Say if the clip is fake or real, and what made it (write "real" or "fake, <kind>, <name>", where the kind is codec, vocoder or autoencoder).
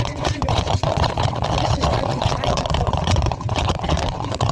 fake, vocoder, WaveNeXt